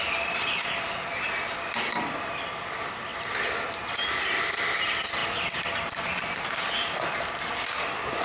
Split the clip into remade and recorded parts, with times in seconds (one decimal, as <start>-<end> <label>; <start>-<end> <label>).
0.0-8.2 recorded